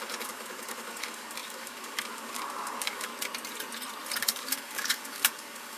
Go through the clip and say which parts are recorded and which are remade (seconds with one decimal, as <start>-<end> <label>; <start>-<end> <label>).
0.0-3.1 remade; 3.1-4.2 recorded; 4.2-5.8 remade